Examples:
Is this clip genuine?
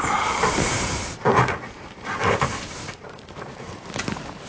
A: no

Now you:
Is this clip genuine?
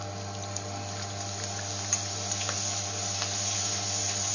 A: yes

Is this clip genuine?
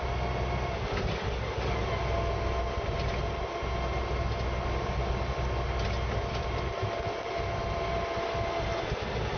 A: yes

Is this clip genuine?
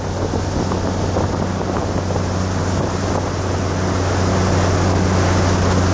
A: yes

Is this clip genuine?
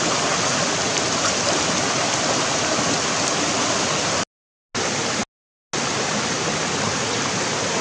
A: yes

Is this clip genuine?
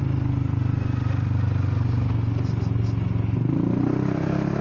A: yes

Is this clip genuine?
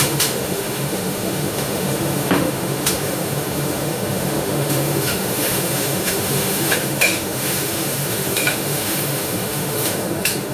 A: no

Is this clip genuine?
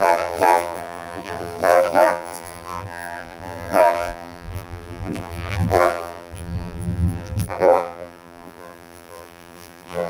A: no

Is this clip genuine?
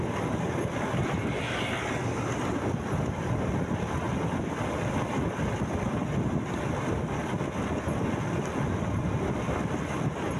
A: yes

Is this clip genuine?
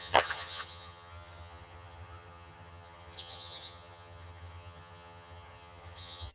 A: no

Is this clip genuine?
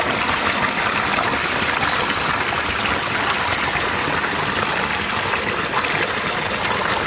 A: yes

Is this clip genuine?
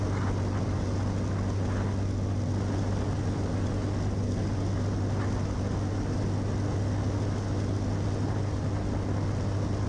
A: yes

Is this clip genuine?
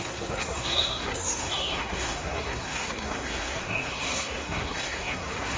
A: no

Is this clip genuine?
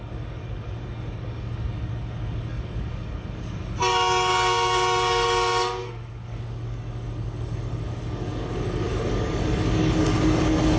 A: no